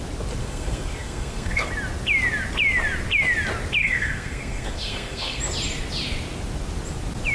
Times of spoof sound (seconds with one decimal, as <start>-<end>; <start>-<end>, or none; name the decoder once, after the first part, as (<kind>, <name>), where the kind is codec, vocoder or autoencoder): 0.4-1.7 (codec, SNAC); 3.8-5.4